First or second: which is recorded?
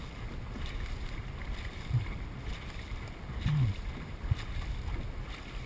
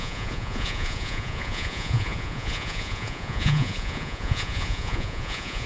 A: first